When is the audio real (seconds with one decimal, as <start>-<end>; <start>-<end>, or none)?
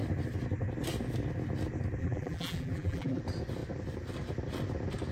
0.0-2.0; 3.2-5.1